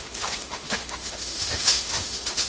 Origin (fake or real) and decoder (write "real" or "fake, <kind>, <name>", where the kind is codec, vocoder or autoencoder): fake, autoencoder, DAC-VAE